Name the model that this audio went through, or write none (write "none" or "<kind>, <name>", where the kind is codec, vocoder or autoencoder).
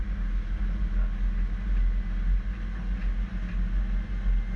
none